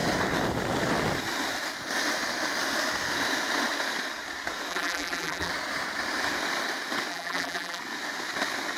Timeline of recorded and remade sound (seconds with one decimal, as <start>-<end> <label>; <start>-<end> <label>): 0.0-4.7 recorded; 4.7-5.5 remade; 5.5-7.1 recorded; 7.1-7.8 remade; 7.8-8.8 recorded